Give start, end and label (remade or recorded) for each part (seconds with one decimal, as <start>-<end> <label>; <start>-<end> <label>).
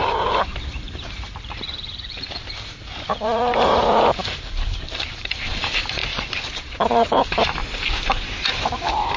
0.0-6.0 remade; 6.0-6.6 recorded; 6.6-9.2 remade